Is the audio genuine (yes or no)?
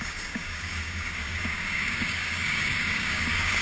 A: no